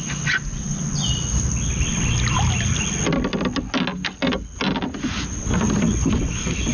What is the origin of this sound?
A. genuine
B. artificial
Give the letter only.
A